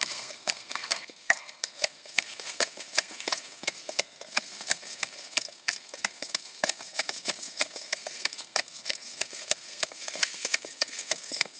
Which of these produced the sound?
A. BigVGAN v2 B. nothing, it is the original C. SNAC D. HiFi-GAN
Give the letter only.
C